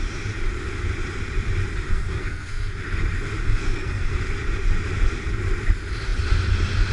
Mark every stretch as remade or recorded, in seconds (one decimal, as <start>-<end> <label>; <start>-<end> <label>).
0.0-1.9 recorded; 1.9-2.7 remade; 2.7-3.4 recorded; 3.4-4.2 remade; 4.2-6.9 recorded